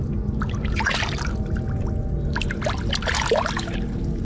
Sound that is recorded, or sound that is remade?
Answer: recorded